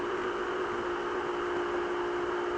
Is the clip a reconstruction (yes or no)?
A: no